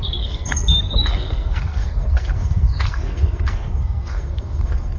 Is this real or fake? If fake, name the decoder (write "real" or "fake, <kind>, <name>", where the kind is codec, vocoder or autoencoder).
fake, codec, SNAC